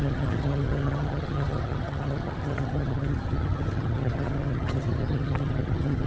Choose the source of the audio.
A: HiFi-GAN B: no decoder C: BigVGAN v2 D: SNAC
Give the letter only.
A